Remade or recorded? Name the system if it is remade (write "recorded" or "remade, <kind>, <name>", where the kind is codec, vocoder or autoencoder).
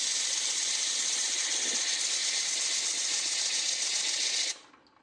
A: recorded